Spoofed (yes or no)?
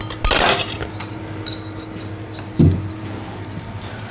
no